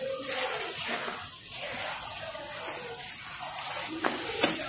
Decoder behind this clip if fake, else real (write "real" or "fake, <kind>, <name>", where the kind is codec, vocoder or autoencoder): real